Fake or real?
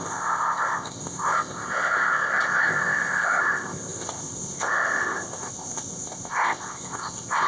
fake